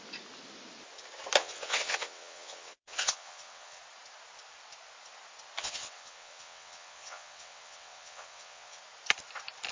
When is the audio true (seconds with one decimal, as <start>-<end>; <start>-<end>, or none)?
0.0-1.4; 3.8-5.6; 8.8-9.7